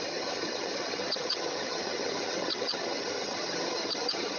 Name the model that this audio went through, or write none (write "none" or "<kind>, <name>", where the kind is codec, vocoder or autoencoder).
vocoder, HiFi-GAN